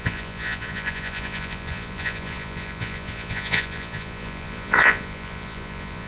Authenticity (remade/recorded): remade